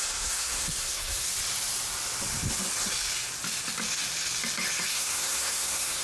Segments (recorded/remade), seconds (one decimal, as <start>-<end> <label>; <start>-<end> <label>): 0.0-1.3 remade; 1.3-4.9 recorded; 4.9-6.0 remade